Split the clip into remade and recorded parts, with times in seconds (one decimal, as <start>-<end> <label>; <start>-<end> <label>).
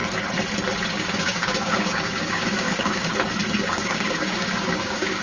0.0-0.9 recorded; 0.9-3.1 remade; 3.1-3.7 recorded; 3.7-5.2 remade